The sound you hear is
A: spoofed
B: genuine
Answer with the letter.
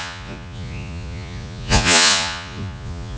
A